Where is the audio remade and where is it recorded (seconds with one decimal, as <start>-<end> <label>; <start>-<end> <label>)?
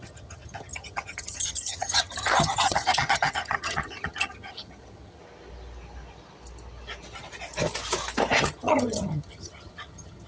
0.0-5.2 remade; 5.2-8.4 recorded; 8.4-10.3 remade